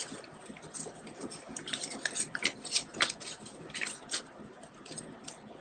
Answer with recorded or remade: recorded